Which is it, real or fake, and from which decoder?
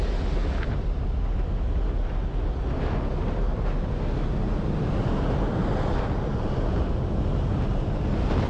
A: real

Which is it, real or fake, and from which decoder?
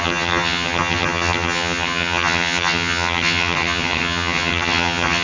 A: fake, vocoder, HiFi-GAN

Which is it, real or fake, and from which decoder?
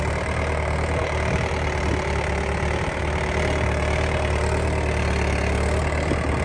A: real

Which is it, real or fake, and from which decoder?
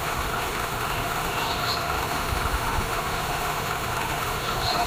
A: fake, autoencoder, DAC-VAE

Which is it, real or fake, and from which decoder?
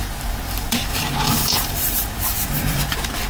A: fake, vocoder, BigVGAN v2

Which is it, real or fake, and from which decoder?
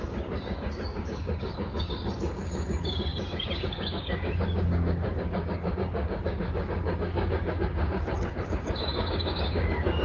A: fake, codec, DAC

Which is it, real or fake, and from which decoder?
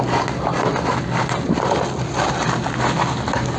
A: real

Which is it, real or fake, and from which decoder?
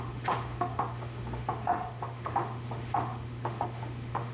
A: fake, autoencoder, DAC-VAE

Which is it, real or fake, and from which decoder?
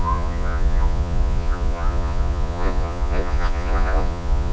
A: fake, vocoder, Vocos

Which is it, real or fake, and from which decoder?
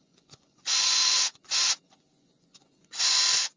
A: fake, vocoder, Vocos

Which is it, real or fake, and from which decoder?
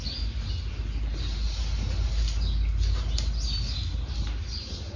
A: real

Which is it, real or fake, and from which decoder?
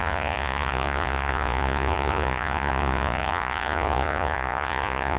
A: fake, vocoder, Vocos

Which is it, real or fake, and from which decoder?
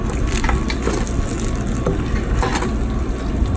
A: real